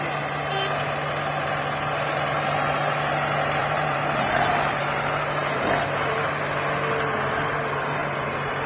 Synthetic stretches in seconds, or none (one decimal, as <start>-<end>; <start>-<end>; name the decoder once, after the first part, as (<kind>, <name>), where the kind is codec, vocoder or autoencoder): 3.6-4.8 (vocoder, BigVGAN v2); 8.0-8.7